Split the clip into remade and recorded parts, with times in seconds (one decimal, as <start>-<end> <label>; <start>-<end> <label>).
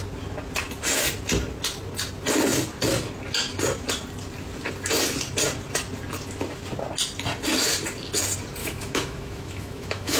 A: 0.0-8.6 recorded; 8.6-10.2 remade